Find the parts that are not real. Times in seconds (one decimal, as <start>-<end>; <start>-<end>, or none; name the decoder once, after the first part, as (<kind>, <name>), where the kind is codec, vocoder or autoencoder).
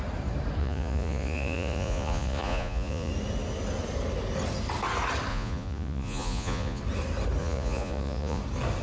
0.6-3.1 (vocoder, Vocos); 5.3-6.8; 7.4-8.4